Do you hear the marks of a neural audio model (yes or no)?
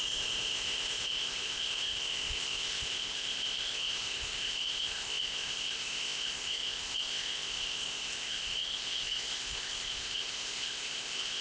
yes